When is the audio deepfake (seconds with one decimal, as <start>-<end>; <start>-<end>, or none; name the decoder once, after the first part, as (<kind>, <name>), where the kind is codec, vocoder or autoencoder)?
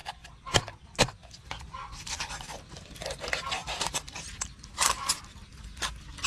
none